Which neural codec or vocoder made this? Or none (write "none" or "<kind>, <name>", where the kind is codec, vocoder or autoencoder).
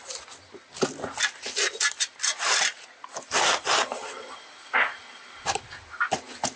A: none